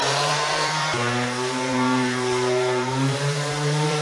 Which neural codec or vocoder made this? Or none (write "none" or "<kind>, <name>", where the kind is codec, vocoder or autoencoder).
vocoder, BigVGAN v2